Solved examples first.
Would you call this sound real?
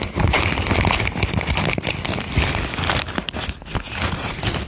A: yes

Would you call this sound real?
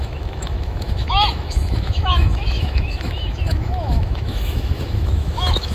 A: no